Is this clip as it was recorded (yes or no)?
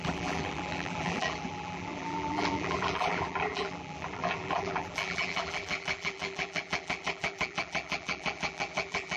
no